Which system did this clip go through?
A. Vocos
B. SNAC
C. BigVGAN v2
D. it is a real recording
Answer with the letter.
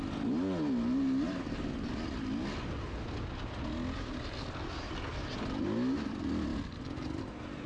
D